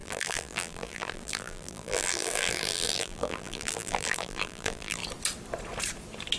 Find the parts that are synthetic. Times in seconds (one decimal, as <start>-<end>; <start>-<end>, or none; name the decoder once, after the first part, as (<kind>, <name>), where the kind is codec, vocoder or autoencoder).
0.0-5.0 (vocoder, BigVGAN v2)